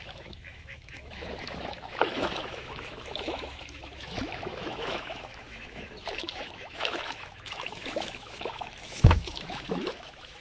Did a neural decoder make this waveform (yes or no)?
yes